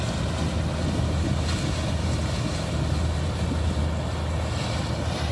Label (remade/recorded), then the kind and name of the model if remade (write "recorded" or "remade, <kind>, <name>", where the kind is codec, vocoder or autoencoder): recorded